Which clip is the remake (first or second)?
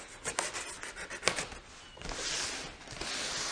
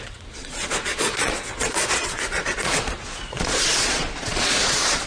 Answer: second